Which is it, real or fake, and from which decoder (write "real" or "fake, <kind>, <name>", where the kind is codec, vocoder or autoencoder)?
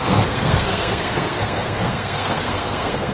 fake, codec, SNAC